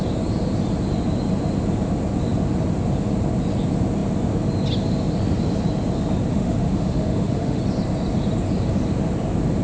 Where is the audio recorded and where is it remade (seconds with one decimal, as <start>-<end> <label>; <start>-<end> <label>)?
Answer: 0.0-6.3 recorded; 6.3-7.6 remade; 7.6-9.6 recorded